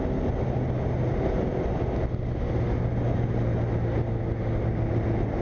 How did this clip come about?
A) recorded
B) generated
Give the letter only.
A